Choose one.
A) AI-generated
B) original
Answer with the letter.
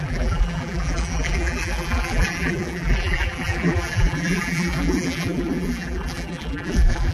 A